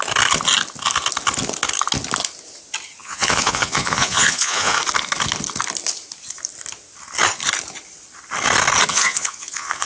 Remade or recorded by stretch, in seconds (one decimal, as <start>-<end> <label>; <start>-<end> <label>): 0.0-3.0 recorded; 3.0-4.8 remade; 4.8-8.9 recorded; 8.9-9.9 remade